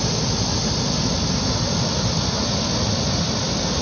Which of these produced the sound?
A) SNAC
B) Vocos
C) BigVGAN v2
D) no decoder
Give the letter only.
D